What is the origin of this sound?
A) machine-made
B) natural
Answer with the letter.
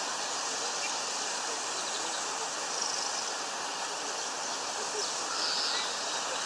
B